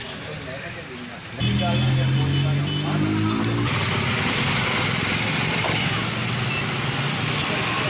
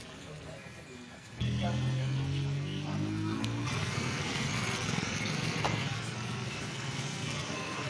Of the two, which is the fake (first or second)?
second